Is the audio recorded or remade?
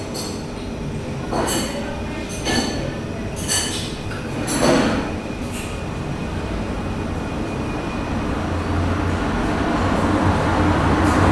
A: recorded